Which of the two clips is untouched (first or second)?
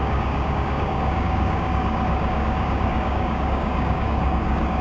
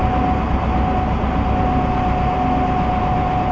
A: second